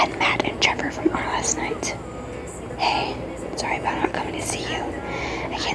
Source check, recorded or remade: recorded